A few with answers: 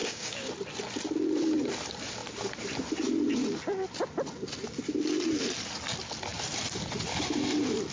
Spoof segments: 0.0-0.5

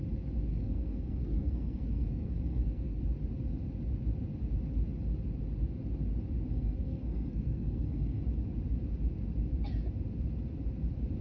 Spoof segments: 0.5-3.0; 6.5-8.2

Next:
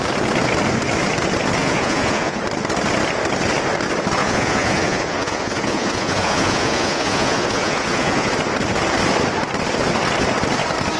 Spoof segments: 1.6-2.4; 4.2-8.3

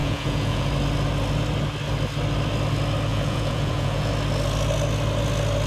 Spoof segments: 0.0-0.7; 3.1-4.1

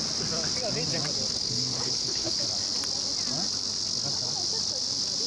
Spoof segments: 1.4-2.4

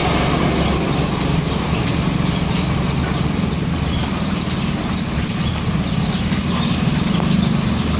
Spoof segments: none